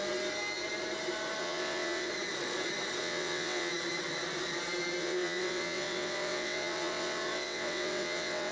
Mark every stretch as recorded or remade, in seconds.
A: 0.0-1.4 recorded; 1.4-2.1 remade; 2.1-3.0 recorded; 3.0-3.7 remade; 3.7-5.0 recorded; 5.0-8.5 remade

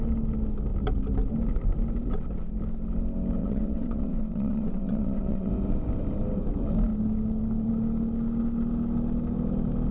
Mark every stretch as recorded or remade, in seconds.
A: 0.0-3.4 recorded; 3.4-5.5 remade; 5.5-9.9 recorded

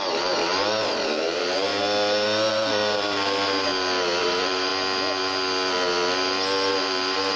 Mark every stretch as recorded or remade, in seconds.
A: 0.0-1.7 remade; 1.7-2.5 recorded; 2.5-3.7 remade; 3.7-4.2 recorded; 4.2-4.7 remade; 4.7-6.7 recorded; 6.7-7.4 remade

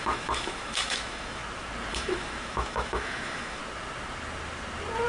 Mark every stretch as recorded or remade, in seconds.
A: 0.0-1.4 remade; 1.4-1.9 recorded; 1.9-3.6 remade; 3.6-5.1 recorded